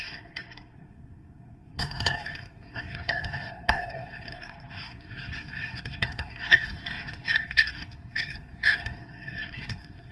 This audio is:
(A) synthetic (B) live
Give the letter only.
A